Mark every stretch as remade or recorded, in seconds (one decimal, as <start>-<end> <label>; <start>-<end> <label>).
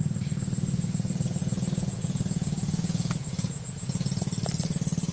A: 0.0-1.4 recorded; 1.4-4.2 remade; 4.2-5.1 recorded